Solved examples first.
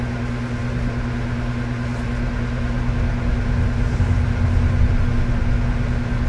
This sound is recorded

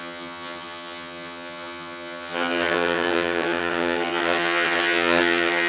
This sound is remade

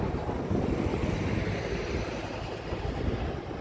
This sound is recorded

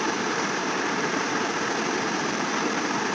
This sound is remade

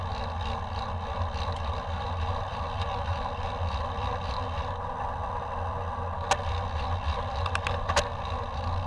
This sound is recorded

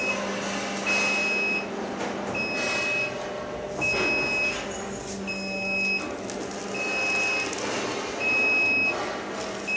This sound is recorded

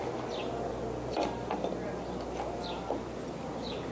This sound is recorded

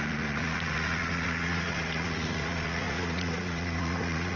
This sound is remade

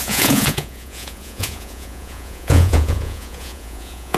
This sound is remade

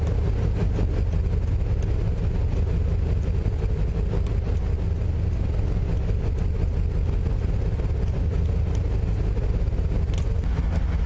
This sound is recorded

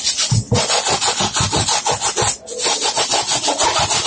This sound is recorded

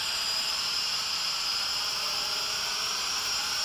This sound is remade